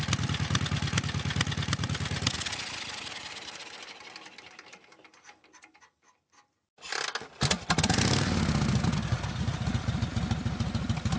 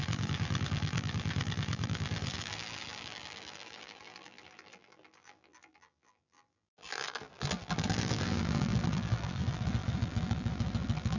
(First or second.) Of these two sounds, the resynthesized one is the second